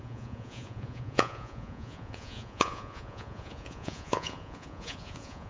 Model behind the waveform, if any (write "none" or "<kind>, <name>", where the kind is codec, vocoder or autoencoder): vocoder, Vocos